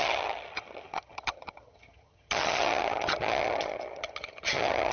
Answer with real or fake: fake